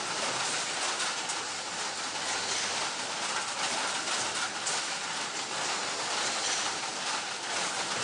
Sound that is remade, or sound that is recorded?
recorded